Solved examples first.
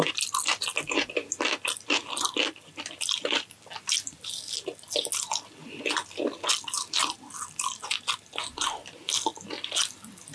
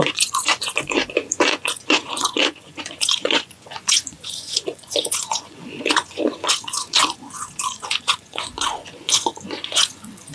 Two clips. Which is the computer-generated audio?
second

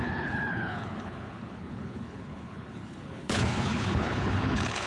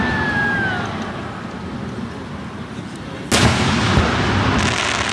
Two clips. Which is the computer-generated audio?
first